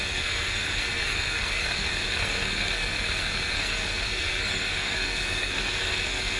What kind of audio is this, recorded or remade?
remade